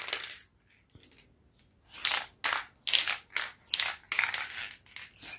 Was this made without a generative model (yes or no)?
yes